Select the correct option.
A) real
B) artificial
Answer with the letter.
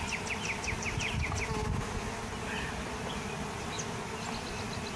A